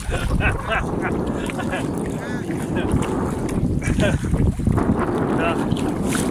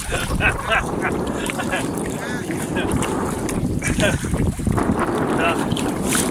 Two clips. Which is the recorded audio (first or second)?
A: first